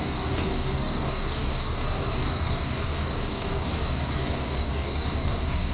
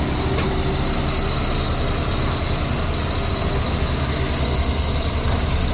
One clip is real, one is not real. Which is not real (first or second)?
first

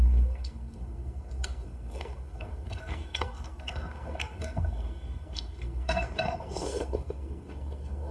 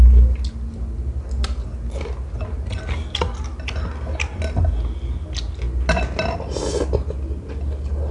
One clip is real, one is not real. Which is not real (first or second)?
first